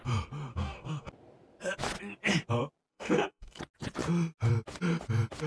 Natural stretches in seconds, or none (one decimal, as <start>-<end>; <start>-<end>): 0.0-0.5; 1.1-2.9; 3.6-5.5